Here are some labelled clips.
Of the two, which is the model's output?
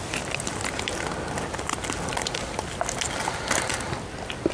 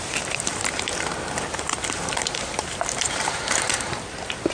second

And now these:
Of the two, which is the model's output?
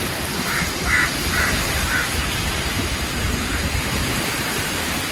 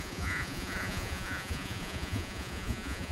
second